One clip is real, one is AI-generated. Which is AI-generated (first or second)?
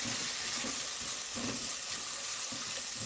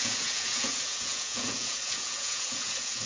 second